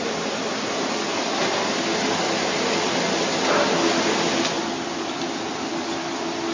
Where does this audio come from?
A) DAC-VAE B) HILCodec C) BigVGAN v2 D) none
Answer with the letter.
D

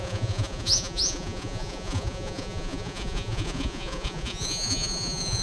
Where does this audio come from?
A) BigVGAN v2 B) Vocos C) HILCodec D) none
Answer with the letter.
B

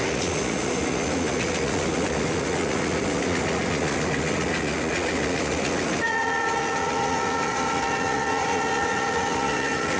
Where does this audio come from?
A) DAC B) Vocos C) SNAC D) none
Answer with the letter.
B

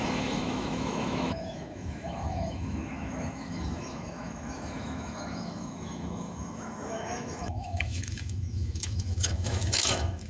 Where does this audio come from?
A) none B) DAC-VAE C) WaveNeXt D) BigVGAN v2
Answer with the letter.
B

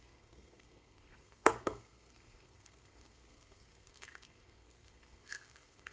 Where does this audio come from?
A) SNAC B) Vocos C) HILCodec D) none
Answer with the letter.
A